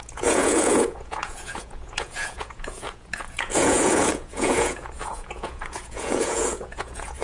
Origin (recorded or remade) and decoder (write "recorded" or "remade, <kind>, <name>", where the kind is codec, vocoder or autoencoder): remade, vocoder, Vocos